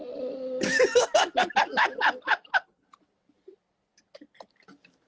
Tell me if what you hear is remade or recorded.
recorded